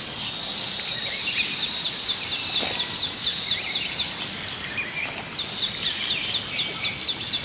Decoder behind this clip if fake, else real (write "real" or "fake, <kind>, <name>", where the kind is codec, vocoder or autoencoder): real